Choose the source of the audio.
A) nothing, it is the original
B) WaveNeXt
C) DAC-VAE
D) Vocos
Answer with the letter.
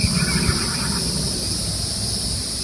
A